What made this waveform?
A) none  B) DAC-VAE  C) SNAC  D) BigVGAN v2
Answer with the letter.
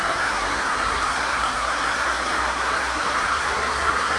C